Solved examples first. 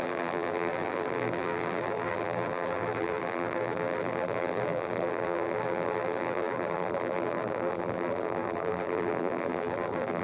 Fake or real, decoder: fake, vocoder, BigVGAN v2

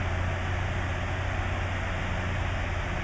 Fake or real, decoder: real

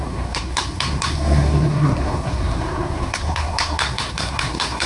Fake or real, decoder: fake, codec, SNAC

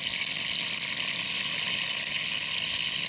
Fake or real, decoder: real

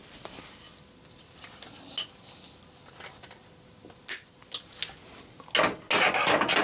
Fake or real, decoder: real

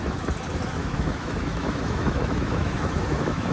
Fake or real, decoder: fake, autoencoder, DAC-VAE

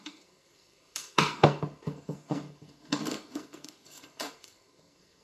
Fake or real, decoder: fake, codec, SNAC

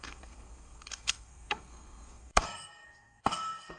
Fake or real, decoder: fake, codec, SNAC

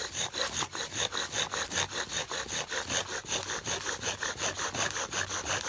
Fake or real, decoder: real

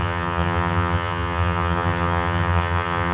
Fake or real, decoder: fake, vocoder, HiFi-GAN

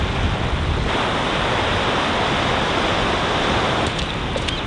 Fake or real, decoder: real